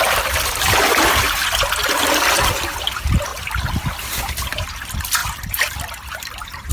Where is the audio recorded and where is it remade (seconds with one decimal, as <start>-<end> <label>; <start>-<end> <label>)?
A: 0.0-1.4 remade; 1.4-2.1 recorded; 2.1-3.3 remade; 3.3-4.0 recorded; 4.0-6.7 remade